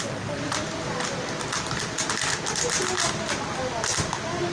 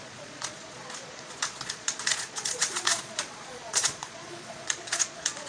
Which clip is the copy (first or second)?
second